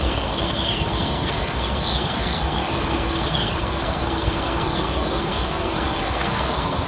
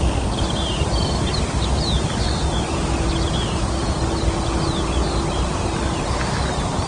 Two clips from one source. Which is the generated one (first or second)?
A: first